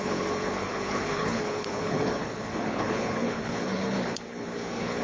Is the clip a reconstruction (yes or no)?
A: yes